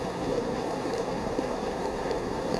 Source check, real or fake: fake